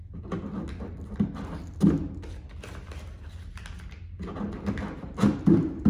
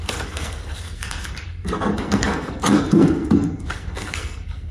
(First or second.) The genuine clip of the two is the first